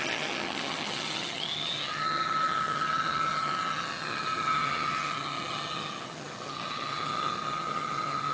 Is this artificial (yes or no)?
yes